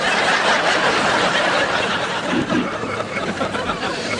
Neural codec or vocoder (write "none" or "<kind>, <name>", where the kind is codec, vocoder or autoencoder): vocoder, BigVGAN v2